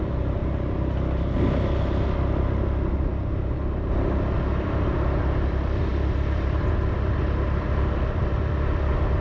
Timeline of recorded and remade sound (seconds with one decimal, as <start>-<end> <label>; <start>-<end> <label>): 0.0-0.4 remade; 0.4-2.6 recorded; 2.6-3.1 remade; 3.1-4.5 recorded; 4.5-9.2 remade